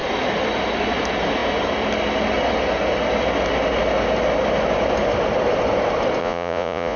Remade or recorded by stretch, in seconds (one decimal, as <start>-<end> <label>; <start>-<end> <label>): 0.0-6.2 recorded; 6.2-7.0 remade